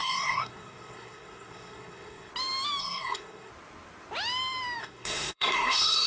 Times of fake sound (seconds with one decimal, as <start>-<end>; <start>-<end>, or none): 0.0-2.3; 2.8-3.5; 4.8-6.1